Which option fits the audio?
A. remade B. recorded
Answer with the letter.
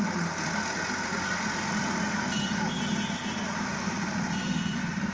B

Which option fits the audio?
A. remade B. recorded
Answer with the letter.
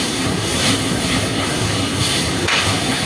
A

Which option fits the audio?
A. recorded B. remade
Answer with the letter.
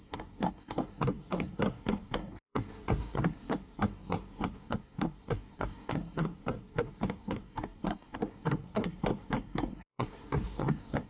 B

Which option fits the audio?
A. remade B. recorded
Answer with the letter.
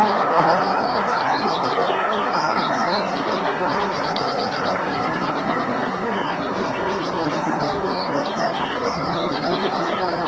A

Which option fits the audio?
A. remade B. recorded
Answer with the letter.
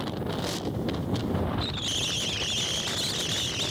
B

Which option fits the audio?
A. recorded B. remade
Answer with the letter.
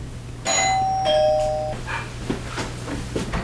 A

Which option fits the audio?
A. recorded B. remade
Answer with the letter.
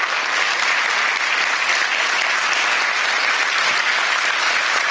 A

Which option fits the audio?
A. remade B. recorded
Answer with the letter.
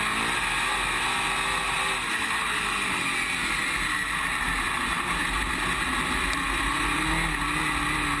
B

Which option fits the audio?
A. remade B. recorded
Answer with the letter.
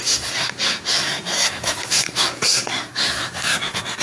A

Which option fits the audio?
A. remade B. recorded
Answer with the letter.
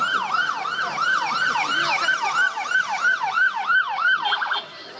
B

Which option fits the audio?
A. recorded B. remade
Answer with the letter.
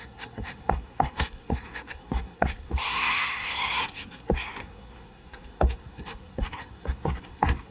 B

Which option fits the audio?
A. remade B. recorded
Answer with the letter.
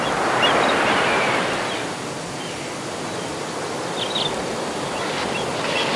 B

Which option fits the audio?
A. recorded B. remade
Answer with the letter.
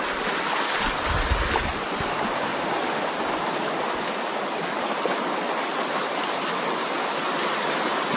A